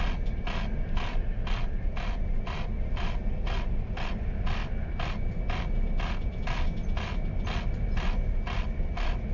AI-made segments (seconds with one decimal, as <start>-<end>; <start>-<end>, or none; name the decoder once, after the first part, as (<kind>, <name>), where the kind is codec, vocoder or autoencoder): none